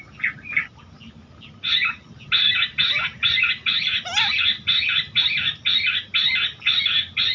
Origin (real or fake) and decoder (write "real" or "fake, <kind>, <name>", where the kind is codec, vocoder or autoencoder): real